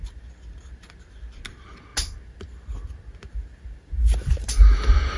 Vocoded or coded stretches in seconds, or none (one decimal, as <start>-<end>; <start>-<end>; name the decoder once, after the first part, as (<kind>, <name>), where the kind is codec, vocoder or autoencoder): none

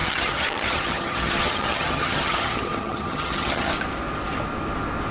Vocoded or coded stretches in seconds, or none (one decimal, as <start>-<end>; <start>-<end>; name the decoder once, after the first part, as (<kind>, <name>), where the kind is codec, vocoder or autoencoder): 0.0-3.7 (vocoder, HiFi-GAN)

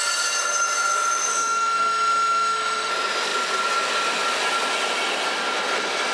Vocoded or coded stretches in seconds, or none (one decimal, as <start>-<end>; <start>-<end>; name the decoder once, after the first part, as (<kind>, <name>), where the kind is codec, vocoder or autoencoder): 1.3-2.9 (autoencoder, DAC-VAE)

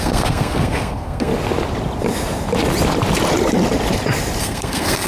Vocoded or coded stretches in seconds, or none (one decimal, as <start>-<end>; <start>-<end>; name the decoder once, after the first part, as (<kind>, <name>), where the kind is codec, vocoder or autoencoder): 0.0-1.3 (codec, SNAC); 4.4-5.1

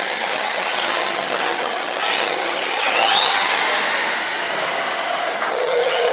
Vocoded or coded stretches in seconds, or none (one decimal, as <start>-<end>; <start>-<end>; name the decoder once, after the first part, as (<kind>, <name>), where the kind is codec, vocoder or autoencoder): 0.0-3.6 (vocoder, HiFi-GAN); 5.5-6.1

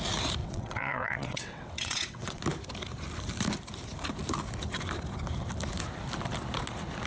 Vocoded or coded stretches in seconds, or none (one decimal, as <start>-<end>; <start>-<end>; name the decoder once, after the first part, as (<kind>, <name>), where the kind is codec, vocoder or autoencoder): 0.4-2.4 (vocoder, WaveNeXt)

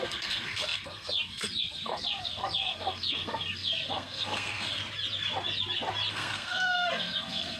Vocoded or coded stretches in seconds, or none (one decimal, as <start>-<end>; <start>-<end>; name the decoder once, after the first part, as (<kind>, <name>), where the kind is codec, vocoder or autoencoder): 0.0-4.8 (codec, SNAC); 6.1-7.6